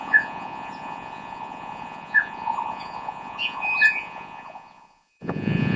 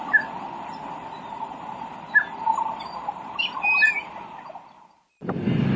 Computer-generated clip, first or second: first